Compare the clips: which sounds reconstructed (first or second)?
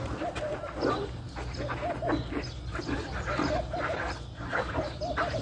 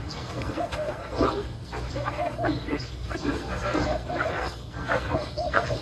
second